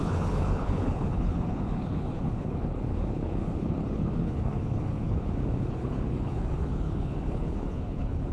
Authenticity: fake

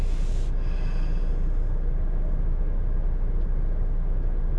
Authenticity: real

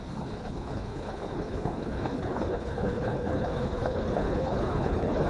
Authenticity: fake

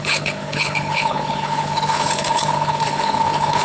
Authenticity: fake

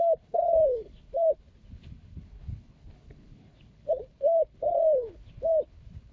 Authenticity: fake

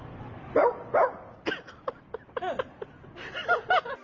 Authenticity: real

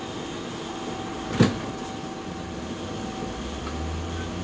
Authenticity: real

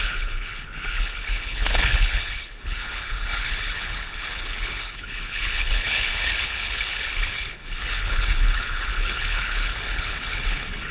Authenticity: fake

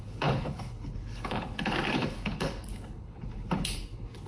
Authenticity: fake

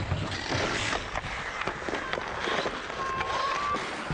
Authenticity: real